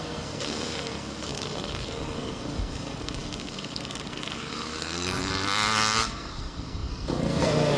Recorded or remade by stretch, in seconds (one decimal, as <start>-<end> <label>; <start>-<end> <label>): 0.0-5.3 remade; 5.3-6.0 recorded; 6.0-7.8 remade